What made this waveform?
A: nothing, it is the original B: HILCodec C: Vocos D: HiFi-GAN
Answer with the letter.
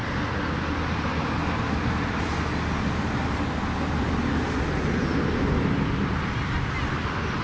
A